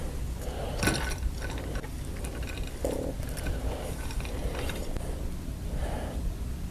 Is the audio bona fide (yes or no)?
no